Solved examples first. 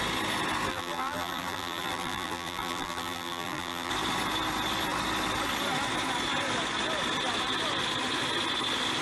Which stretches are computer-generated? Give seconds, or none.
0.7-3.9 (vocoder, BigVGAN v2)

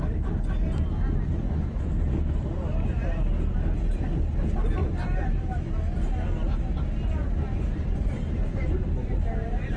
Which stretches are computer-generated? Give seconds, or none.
4.8-5.7 (vocoder, BigVGAN v2); 7.2-9.8

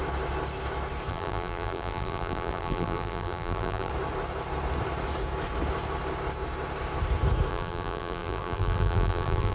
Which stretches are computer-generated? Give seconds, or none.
1.1-3.9 (vocoder, BigVGAN v2); 7.5-9.5

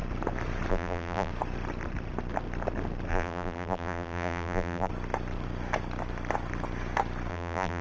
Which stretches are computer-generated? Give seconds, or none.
0.7-1.3 (vocoder, BigVGAN v2); 3.1-4.9; 7.3-7.8

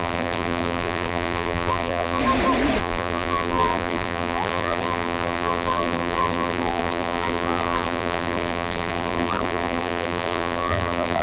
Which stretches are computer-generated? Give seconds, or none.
0.0-2.2 (vocoder, BigVGAN v2); 2.8-11.2

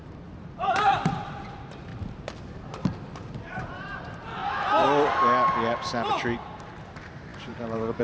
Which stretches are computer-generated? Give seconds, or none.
0.0-1.9 (vocoder, BigVGAN v2); 2.5-4.4; 6.1-8.0